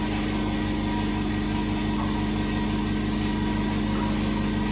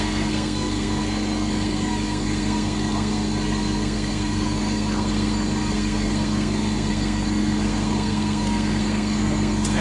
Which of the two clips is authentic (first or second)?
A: first